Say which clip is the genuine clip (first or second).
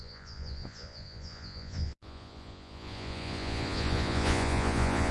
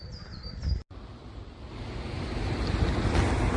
second